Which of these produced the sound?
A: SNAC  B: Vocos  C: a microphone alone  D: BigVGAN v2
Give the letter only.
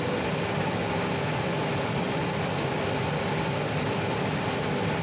C